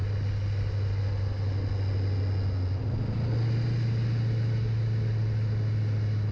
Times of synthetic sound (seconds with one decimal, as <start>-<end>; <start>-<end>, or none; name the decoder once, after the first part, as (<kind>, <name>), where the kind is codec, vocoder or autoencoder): none